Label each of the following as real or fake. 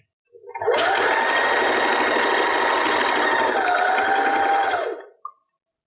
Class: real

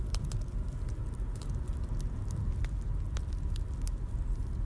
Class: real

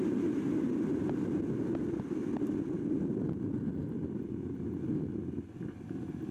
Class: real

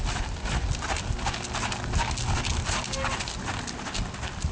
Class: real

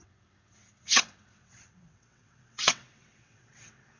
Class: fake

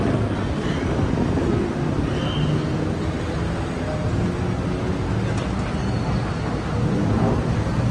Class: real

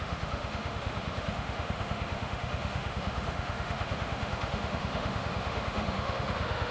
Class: fake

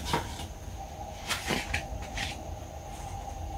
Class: fake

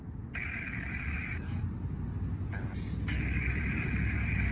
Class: real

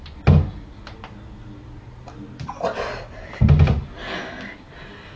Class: real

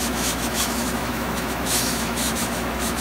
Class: fake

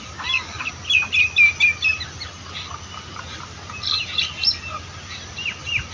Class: real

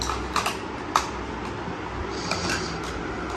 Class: real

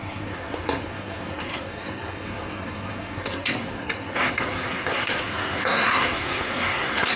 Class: fake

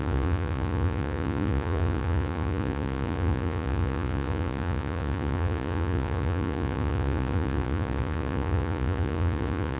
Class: fake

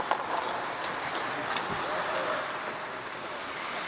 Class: real